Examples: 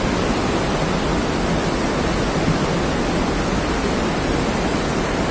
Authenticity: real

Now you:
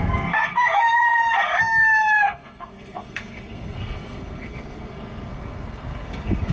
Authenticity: fake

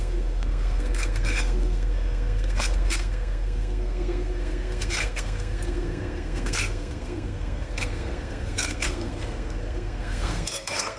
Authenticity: fake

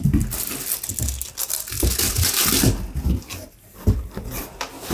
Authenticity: real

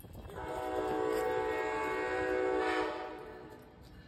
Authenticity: real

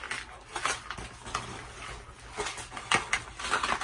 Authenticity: real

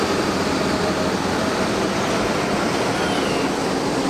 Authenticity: real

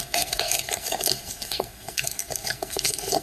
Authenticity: fake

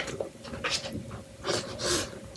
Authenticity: real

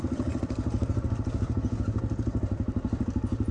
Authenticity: real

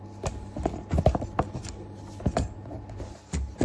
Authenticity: real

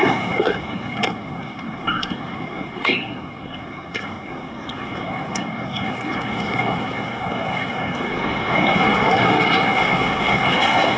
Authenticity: fake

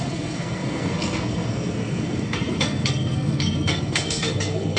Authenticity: fake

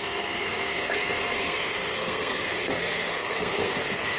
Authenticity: fake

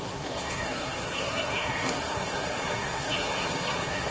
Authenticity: fake